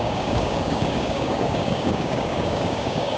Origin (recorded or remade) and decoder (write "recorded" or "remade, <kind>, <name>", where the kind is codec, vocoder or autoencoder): remade, codec, DAC